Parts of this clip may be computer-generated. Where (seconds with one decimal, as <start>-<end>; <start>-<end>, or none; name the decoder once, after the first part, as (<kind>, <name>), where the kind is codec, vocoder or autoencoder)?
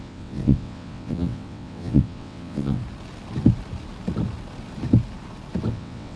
0.0-2.8 (vocoder, WaveNeXt); 5.7-6.2